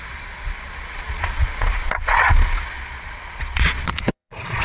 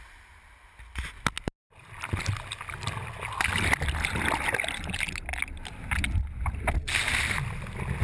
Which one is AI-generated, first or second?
first